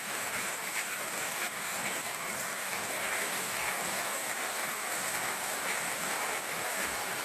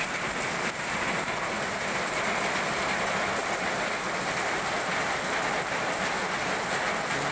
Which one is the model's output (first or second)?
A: first